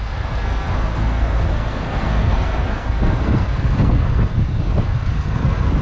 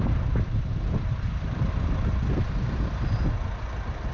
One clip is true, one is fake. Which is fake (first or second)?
first